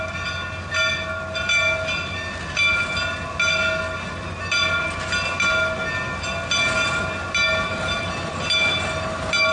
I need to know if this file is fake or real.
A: real